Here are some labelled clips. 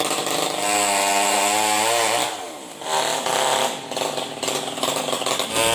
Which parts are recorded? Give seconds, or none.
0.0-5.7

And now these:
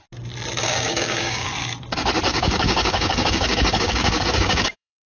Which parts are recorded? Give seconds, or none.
0.0-0.6; 1.5-2.3

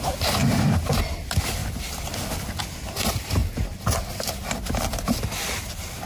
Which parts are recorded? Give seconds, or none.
0.0-0.4; 1.0-6.1